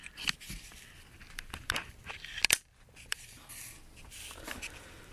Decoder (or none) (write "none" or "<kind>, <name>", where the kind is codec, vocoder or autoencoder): none